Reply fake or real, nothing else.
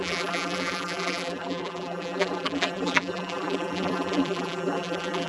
fake